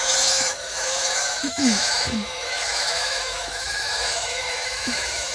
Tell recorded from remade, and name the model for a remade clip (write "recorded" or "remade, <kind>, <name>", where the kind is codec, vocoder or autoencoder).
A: remade, autoencoder, DAC-VAE